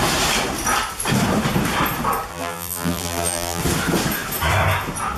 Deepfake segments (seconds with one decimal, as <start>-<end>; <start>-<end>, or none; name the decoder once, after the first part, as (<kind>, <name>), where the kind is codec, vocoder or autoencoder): 2.3-3.6 (vocoder, BigVGAN v2)